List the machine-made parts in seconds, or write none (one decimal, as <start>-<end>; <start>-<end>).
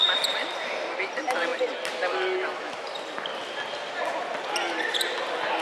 none